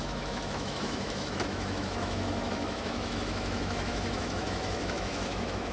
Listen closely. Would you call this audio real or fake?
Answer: fake